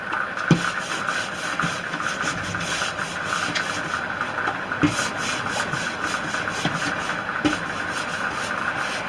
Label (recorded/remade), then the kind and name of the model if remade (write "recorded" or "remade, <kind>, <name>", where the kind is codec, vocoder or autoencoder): recorded